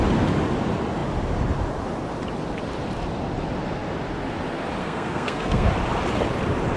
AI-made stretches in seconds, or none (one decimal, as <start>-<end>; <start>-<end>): 4.8-5.7